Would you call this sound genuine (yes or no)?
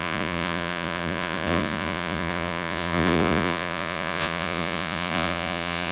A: no